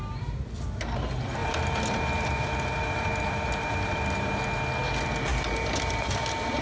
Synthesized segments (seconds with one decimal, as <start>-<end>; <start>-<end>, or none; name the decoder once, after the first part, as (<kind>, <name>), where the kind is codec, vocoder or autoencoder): 1.4-4.4 (vocoder, BigVGAN v2)